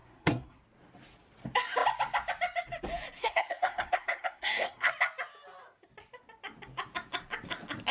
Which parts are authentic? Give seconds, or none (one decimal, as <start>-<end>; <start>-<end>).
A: 0.6-3.2; 4.9-7.9